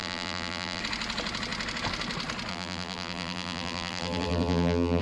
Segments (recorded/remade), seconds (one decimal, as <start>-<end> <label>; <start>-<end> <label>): 0.0-0.8 remade; 0.8-2.5 recorded; 2.5-5.0 remade